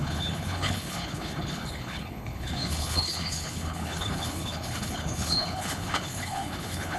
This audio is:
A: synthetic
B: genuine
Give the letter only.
A